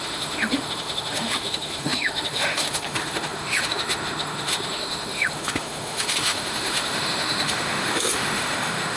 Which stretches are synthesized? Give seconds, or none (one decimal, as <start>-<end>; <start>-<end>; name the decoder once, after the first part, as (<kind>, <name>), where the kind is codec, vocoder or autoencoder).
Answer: 0.0-9.0 (autoencoder, DAC-VAE)

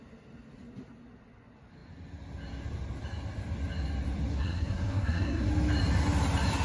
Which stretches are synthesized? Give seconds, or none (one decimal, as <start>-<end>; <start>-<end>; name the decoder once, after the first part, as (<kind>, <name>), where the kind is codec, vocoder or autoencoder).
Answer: 4.3-5.5 (codec, SNAC)

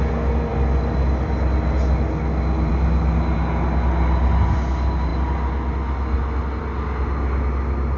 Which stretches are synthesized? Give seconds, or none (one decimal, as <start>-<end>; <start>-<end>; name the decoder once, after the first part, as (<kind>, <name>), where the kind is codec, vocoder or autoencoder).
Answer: none